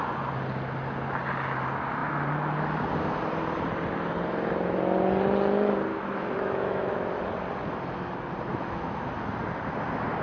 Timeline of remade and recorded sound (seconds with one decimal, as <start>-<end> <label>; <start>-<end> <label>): 0.0-5.9 recorded; 5.9-7.2 remade; 7.2-8.5 recorded; 8.5-9.1 remade; 9.1-10.2 recorded

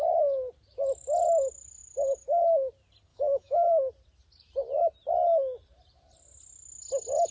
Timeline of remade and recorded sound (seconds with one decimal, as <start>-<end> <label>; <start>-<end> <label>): 0.0-3.1 recorded; 3.1-3.7 remade; 3.7-7.3 recorded

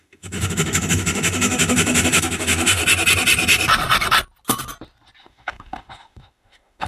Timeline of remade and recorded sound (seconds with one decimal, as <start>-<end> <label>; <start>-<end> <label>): 0.0-2.8 remade; 2.8-5.2 recorded; 5.2-6.9 remade

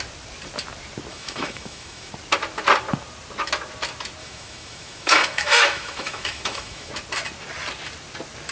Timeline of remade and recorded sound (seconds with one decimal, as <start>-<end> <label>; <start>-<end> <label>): 0.0-1.1 recorded; 1.1-2.1 remade; 2.1-4.2 recorded; 4.2-6.9 remade; 6.9-8.5 recorded

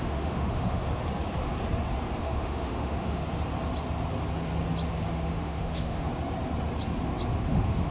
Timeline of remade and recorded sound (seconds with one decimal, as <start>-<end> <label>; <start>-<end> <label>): 0.0-0.8 remade; 0.8-2.2 recorded; 2.2-3.2 remade; 3.2-5.0 recorded; 5.0-6.1 remade; 6.1-7.4 recorded; 7.4-7.9 remade